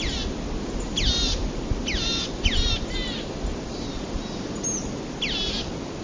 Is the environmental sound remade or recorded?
recorded